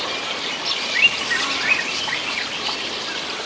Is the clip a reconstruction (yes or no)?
no